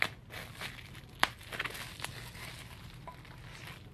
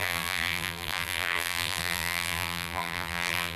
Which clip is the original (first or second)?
first